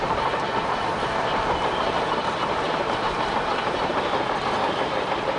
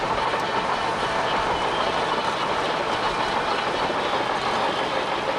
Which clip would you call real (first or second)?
second